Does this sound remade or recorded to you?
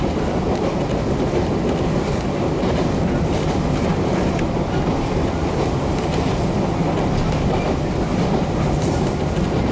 recorded